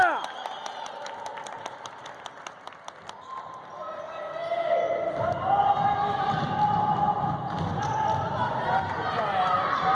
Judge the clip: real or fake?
real